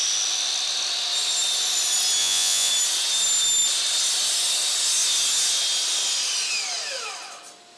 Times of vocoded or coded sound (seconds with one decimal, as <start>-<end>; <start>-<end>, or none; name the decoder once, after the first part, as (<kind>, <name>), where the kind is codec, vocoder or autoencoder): 2.2-2.7 (vocoder, Vocos)